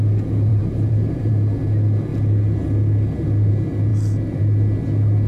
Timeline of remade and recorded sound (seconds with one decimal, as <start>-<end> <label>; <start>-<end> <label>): 0.0-0.5 recorded; 0.5-1.3 remade; 1.3-5.3 recorded